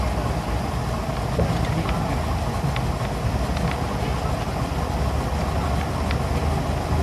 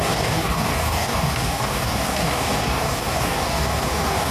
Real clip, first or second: first